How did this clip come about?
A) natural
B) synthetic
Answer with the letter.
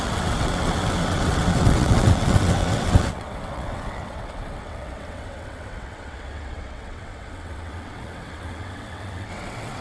B